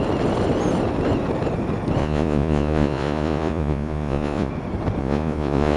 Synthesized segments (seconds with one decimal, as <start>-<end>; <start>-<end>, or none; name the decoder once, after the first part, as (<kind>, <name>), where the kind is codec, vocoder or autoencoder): 2.0-4.5 (vocoder, Vocos); 5.0-5.8